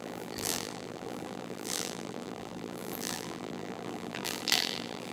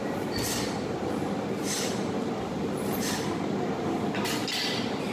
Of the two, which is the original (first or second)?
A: second